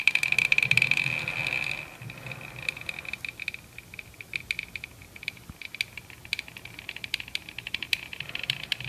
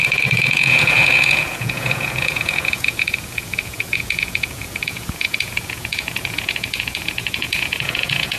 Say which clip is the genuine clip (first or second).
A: first